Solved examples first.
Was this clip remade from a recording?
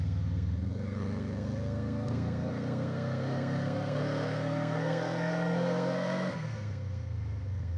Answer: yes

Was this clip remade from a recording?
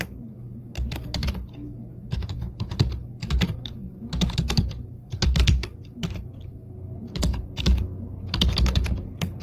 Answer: yes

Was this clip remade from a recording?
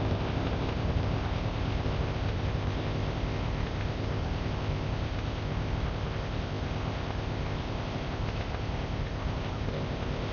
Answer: yes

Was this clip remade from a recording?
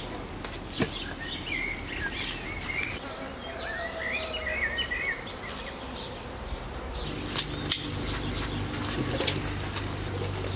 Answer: no